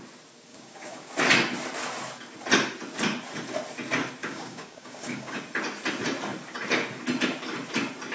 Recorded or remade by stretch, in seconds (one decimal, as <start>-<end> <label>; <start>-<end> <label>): 0.0-0.5 recorded; 0.5-1.1 remade; 1.1-4.2 recorded; 4.2-5.4 remade; 5.4-8.1 recorded